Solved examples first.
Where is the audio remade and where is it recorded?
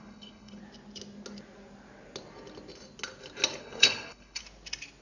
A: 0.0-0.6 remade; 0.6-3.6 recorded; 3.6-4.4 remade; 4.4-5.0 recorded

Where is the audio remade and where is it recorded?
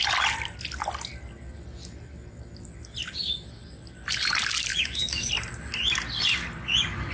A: 0.0-4.7 recorded; 4.7-5.3 remade; 5.3-7.1 recorded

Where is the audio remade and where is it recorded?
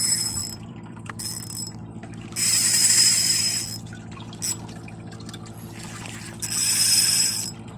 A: 0.0-0.4 recorded; 0.4-1.1 remade; 1.1-6.6 recorded; 6.6-7.8 remade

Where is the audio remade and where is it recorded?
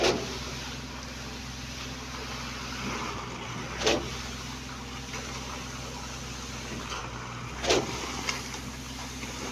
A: 0.0-9.5 recorded